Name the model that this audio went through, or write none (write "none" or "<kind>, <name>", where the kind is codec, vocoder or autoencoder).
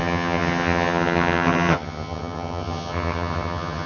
vocoder, HiFi-GAN